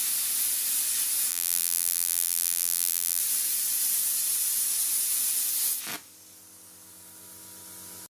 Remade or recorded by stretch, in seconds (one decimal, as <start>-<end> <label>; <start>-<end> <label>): 0.0-1.3 recorded; 1.3-3.2 remade; 3.2-8.2 recorded